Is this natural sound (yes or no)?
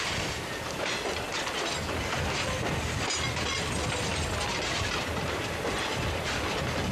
yes